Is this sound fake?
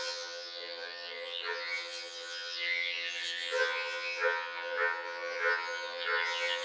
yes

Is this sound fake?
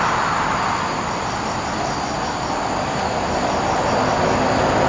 no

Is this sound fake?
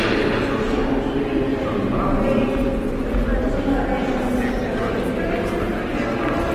no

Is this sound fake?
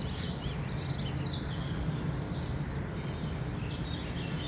no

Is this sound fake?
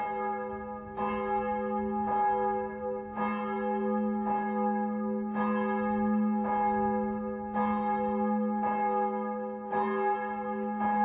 no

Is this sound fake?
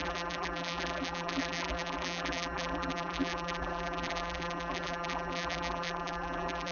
yes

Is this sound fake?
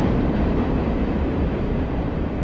yes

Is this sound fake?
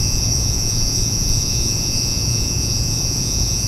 yes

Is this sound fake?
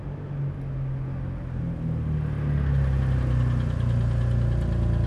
no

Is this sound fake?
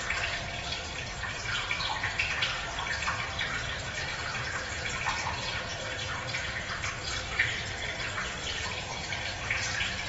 no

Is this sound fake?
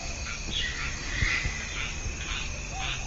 no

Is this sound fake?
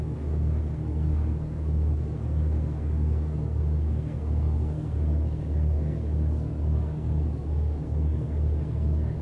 yes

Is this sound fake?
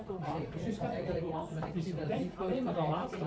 yes